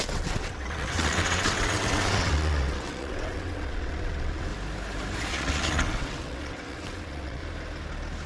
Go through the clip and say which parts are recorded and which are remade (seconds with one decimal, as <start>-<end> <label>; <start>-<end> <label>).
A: 0.0-4.5 remade; 4.5-5.3 recorded; 5.3-7.4 remade; 7.4-8.3 recorded